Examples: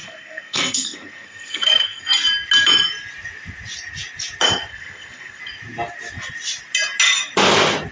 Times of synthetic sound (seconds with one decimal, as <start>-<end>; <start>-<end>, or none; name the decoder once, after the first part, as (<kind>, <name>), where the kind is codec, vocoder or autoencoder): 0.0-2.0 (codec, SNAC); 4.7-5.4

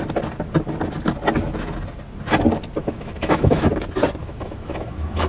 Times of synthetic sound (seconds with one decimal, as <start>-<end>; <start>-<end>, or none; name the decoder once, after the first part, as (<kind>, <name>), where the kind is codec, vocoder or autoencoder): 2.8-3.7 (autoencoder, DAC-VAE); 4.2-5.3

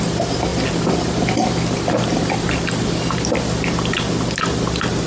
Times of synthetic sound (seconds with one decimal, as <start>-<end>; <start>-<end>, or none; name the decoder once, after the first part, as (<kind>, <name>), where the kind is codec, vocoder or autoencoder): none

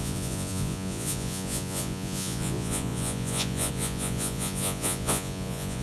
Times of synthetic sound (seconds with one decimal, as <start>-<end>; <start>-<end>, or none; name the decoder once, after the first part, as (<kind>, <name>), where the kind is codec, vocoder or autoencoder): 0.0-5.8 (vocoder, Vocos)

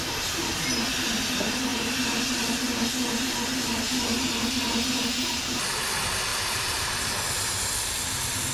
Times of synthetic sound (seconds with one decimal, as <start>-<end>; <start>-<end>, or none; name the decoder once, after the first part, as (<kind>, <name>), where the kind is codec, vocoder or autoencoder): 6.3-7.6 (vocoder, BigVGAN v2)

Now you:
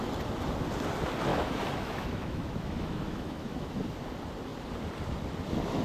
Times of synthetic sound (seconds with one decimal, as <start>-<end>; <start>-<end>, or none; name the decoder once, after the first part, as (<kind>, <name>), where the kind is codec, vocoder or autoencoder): 1.3-3.8 (autoencoder, DAC-VAE)